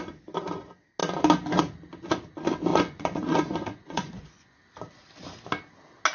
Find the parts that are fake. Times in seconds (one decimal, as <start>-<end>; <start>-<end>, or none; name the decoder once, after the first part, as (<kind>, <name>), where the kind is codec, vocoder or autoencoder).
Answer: 2.7-4.6 (vocoder, Vocos)